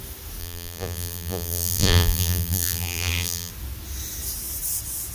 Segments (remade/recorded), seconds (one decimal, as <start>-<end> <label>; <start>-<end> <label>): 0.0-0.4 recorded; 0.4-3.5 remade; 3.5-5.1 recorded